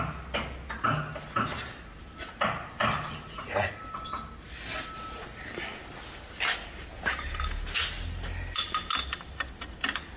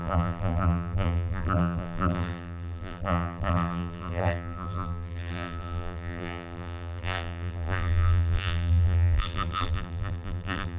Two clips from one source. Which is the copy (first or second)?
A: second